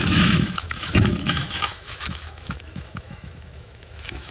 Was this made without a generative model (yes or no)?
no